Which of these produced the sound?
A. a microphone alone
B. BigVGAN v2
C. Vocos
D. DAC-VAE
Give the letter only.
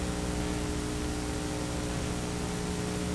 A